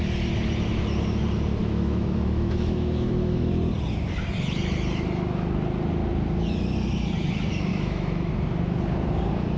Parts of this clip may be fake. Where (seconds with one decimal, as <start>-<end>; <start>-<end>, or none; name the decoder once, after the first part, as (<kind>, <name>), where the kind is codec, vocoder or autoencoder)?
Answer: 1.6-3.5 (autoencoder, DAC-VAE); 7.7-8.3